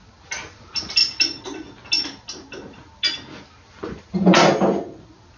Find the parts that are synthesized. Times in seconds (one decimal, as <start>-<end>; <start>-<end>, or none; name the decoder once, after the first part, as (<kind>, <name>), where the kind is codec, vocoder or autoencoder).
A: none